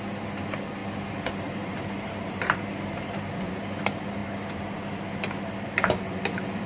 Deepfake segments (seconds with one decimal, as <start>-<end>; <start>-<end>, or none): 0.8-3.5; 4.2-4.7